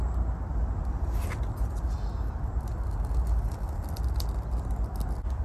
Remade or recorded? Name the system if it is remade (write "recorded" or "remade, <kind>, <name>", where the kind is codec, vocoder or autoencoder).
recorded